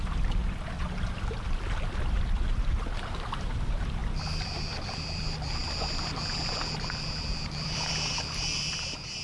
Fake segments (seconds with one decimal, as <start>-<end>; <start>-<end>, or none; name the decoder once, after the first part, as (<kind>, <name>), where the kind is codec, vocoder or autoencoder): 0.0-0.4 (vocoder, BigVGAN v2); 1.3-9.2